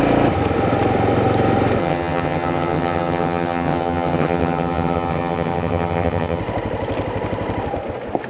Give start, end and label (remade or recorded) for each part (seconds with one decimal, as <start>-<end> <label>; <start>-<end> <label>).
0.0-1.8 recorded; 1.8-6.4 remade; 6.4-8.3 recorded